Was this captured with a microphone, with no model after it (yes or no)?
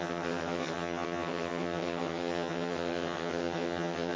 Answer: no